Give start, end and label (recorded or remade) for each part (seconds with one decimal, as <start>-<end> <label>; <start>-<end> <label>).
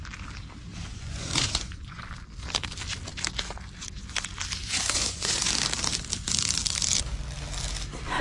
0.0-0.7 recorded; 0.7-2.0 remade; 2.0-4.6 recorded; 4.6-5.5 remade; 5.5-8.2 recorded